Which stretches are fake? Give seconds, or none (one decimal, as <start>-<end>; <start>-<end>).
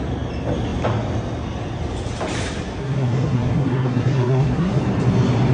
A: 2.8-4.8